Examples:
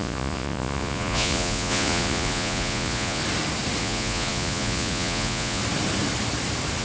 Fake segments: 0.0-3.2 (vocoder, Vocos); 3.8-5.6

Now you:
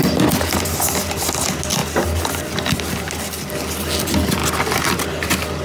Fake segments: none

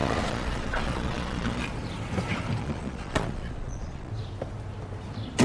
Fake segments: 0.0-1.7 (vocoder, Vocos); 2.6-4.1

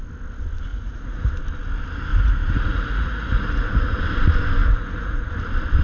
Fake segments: 0.7-1.3 (vocoder, Vocos); 2.1-4.0; 4.6-5.3

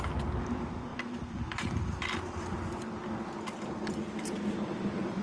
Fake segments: none

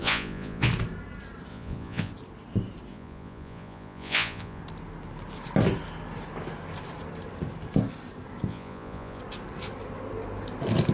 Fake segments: 0.0-0.7 (vocoder, Vocos); 1.5-2.1; 2.9-4.6; 8.5-9.2

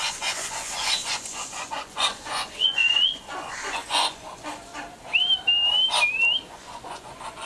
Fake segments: 0.0-4.7 (vocoder, Vocos); 6.5-7.5